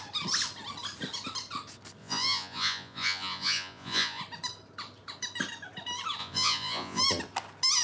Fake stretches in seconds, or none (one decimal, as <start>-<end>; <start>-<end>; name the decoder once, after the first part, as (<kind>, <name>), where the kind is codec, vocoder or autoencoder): 2.0-4.2 (vocoder, Vocos); 6.2-7.0